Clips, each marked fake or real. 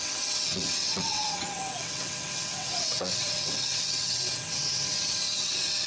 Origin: fake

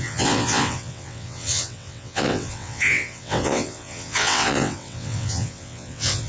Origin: fake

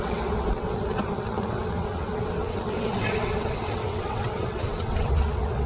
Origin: fake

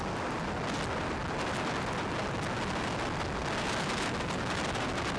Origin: real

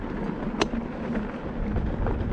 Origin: real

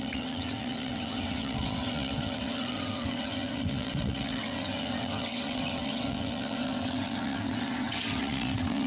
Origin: fake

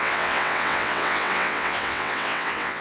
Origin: fake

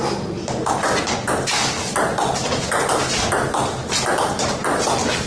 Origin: real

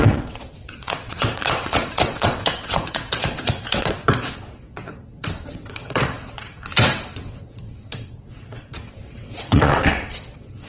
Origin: fake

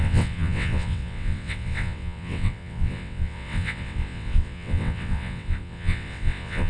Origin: fake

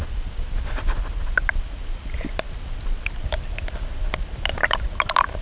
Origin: real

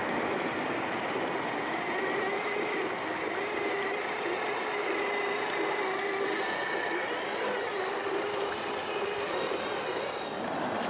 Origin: real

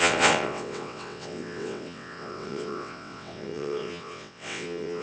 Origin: fake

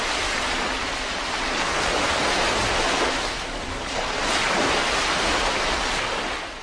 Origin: real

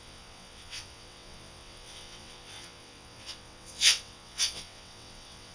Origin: fake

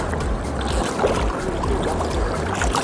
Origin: real